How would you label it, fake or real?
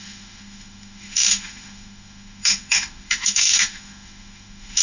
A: fake